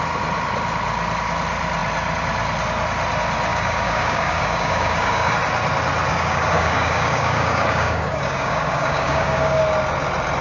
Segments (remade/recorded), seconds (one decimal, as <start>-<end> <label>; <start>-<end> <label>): 0.0-3.5 recorded; 3.5-5.3 remade; 5.3-6.1 recorded; 6.1-9.6 remade; 9.6-10.4 recorded